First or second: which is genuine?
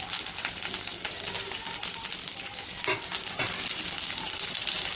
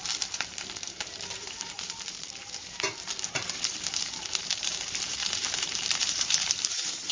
first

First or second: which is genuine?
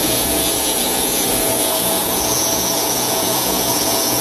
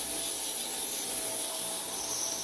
second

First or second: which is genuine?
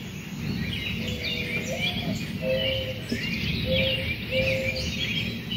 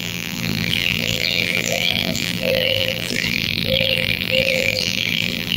first